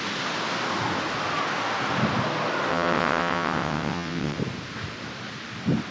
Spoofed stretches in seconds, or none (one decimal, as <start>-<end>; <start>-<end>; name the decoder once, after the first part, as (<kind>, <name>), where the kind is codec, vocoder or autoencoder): 2.7-4.4 (vocoder, WaveNeXt)